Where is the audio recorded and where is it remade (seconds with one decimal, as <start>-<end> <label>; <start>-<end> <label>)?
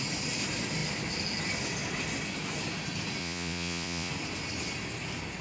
0.0-3.2 recorded; 3.2-4.1 remade; 4.1-5.4 recorded